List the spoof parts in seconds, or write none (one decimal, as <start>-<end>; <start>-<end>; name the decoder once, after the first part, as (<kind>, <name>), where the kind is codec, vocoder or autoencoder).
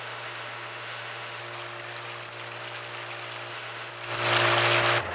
0.0-1.4 (autoencoder, DAC-VAE); 3.5-3.9